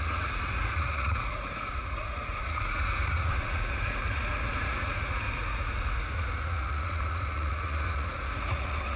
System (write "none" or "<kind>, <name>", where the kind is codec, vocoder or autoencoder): vocoder, Vocos